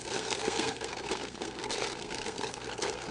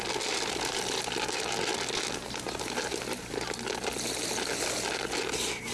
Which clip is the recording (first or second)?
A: second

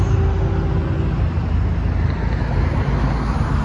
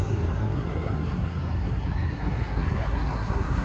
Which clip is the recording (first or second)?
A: first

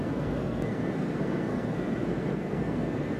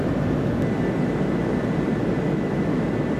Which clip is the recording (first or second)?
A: second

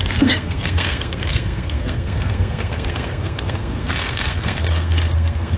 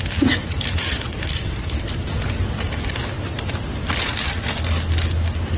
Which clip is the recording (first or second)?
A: second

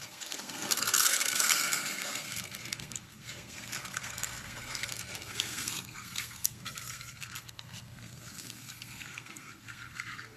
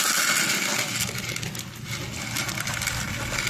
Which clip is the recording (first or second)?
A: second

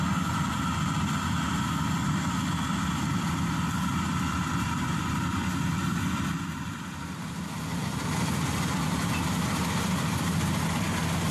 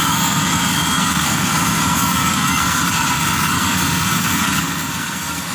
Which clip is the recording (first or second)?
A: first